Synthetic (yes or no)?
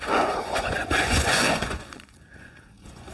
yes